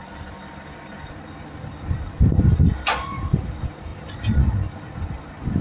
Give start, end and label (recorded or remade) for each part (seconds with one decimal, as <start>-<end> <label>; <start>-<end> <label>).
0.0-5.6 recorded